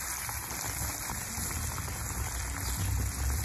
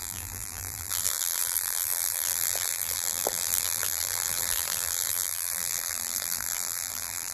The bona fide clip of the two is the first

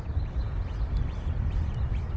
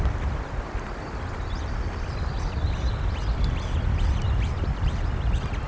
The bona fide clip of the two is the second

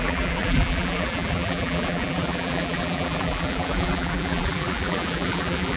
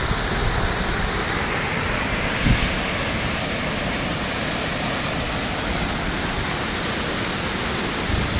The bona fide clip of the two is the second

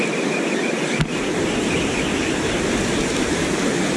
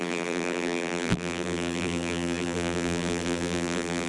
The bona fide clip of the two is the first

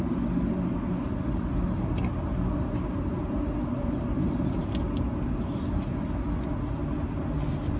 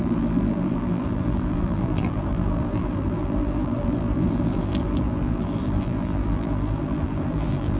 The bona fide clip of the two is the first